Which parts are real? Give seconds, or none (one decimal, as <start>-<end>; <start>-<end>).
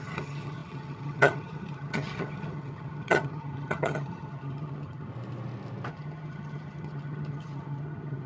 5.1-5.9